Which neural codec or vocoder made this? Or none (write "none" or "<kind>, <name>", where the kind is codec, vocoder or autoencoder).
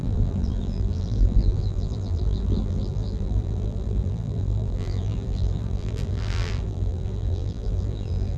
vocoder, BigVGAN v2